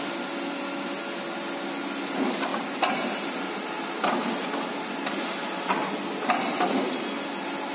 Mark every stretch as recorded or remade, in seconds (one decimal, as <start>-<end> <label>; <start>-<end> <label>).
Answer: 0.0-7.7 recorded